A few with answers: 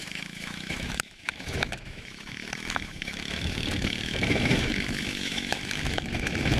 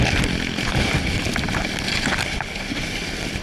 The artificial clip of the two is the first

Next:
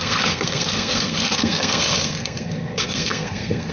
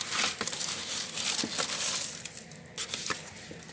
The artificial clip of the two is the first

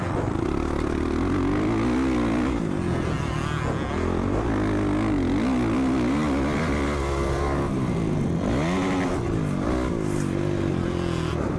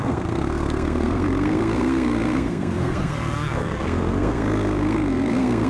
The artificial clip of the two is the second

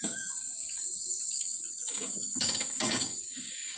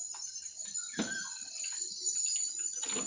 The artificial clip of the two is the first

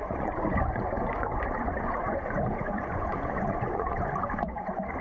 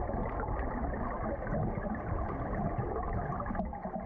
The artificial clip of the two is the first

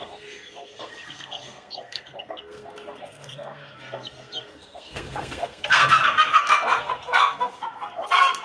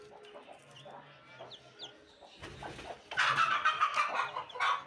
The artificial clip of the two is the first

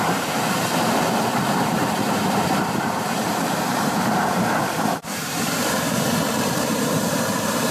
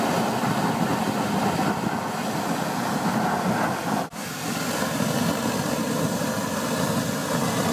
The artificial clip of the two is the first